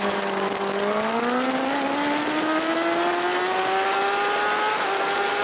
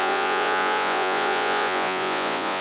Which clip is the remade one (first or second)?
second